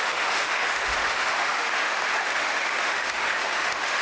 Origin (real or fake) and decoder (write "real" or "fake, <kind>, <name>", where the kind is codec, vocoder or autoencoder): fake, autoencoder, DAC-VAE